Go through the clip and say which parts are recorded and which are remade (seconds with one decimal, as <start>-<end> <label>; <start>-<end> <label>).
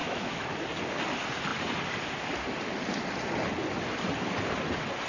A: 0.0-0.6 remade; 0.6-5.1 recorded